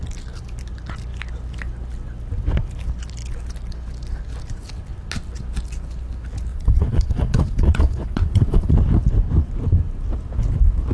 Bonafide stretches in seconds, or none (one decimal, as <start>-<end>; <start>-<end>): 0.0-6.5; 8.7-10.9